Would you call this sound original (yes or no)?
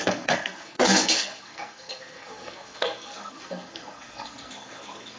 no